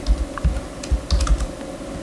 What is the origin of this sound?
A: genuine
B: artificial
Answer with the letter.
A